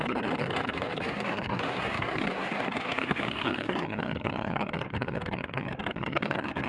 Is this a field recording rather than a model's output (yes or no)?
no